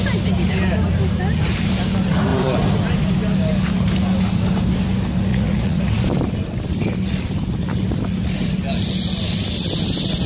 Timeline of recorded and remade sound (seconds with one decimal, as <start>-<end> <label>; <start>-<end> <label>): 0.0-5.3 recorded; 5.3-5.9 remade; 5.9-10.3 recorded